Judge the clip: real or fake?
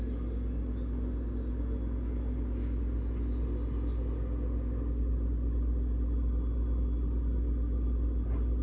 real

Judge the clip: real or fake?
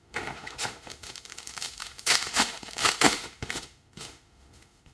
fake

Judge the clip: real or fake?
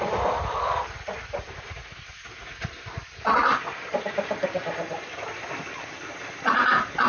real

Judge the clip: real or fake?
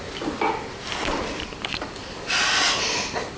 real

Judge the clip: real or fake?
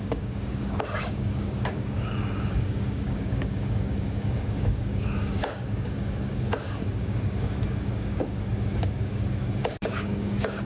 fake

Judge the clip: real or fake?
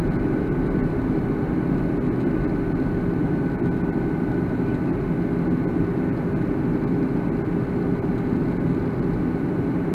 real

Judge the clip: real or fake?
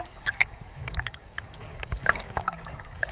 fake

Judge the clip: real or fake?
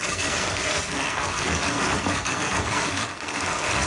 fake